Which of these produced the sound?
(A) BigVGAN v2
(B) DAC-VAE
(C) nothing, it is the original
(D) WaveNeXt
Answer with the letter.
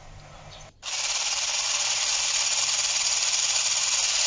C